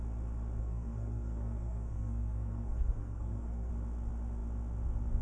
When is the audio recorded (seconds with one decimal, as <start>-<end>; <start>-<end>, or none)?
0.0-0.6; 3.7-5.2

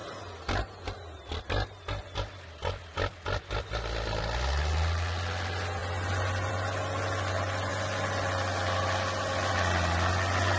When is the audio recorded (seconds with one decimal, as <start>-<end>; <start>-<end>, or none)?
0.0-10.6

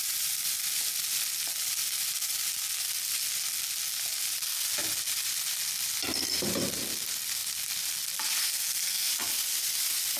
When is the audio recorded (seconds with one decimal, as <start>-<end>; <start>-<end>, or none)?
0.0-8.4; 9.1-10.2

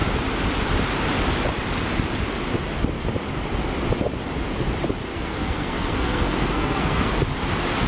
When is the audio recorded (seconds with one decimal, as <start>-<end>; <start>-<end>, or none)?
0.0-5.1; 7.1-7.9

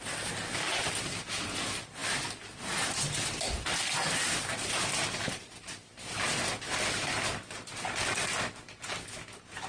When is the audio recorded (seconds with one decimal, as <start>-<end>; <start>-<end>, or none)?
0.0-9.7

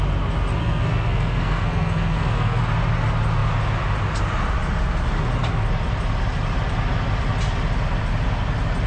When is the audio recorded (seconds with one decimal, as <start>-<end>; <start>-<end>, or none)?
0.0-0.6; 2.6-8.9

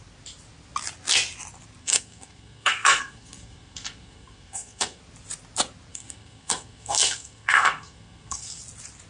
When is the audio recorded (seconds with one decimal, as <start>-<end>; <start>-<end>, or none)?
0.0-1.8; 5.0-5.9; 8.6-9.1